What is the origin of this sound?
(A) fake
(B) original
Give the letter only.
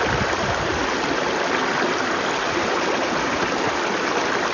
B